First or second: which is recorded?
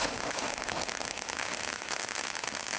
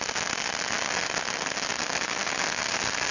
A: second